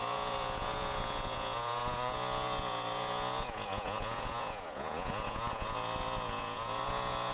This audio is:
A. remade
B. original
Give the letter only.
A